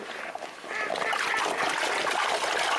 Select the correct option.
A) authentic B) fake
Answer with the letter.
A